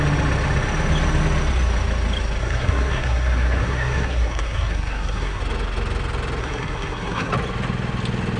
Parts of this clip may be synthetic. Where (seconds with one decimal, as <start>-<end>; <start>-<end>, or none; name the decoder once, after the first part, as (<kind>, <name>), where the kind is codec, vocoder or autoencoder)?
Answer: 2.4-5.4 (codec, SNAC); 6.4-7.3